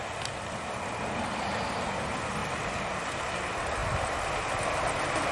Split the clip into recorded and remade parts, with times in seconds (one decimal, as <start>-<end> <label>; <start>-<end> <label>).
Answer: 0.0-5.3 recorded